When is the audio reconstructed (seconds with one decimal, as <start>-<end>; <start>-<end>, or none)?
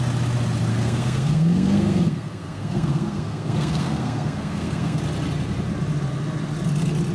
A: 0.7-5.0